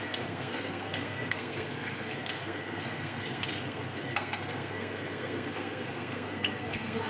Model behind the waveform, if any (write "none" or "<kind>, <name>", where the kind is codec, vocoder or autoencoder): codec, SNAC